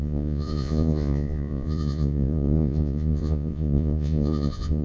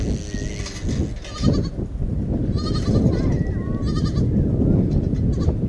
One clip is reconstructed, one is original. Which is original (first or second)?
second